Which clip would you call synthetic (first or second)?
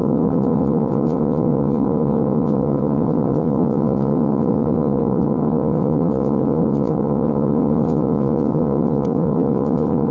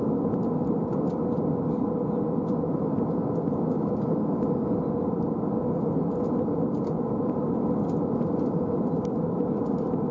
first